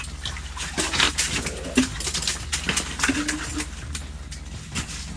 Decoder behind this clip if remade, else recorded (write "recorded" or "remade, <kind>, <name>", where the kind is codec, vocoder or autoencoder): recorded